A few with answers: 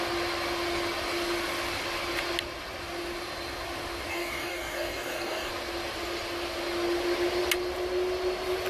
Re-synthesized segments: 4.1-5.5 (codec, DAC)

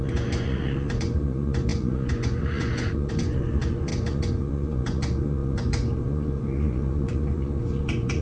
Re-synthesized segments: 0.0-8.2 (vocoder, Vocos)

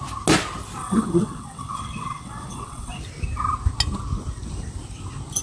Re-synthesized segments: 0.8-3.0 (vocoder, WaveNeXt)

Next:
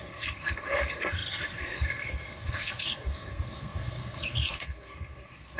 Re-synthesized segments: 0.0-5.6 (codec, SNAC)